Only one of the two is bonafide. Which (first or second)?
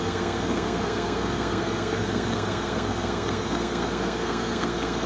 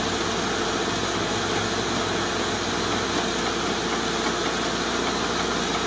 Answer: second